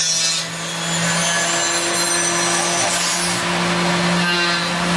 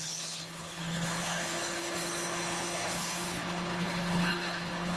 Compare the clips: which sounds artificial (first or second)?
second